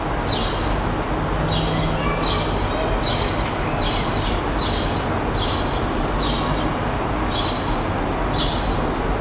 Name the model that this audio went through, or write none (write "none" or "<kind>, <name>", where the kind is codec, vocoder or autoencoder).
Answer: none